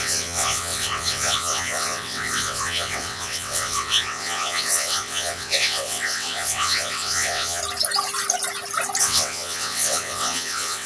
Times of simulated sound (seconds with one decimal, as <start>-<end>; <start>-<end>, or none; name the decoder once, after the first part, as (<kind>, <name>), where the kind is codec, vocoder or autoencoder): 0.0-7.6 (vocoder, WaveNeXt); 9.0-10.9